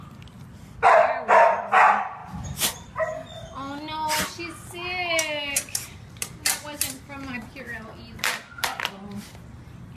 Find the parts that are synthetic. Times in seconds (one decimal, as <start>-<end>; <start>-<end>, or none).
2.2-2.9